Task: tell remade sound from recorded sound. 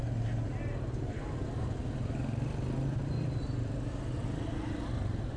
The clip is recorded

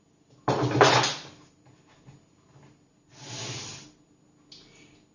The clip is recorded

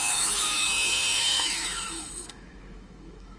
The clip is remade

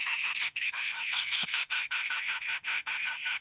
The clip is remade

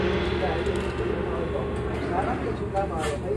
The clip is recorded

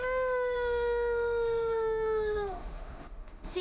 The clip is remade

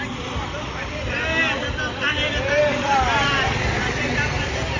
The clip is recorded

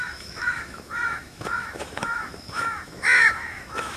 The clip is remade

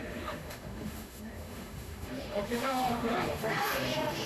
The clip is remade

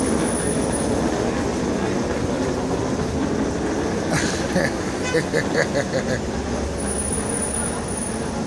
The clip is recorded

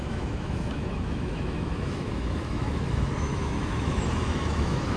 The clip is remade